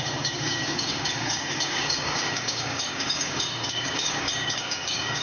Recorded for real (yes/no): no